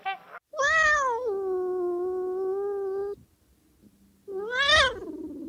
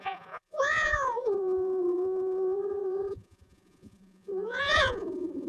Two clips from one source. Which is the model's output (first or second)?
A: second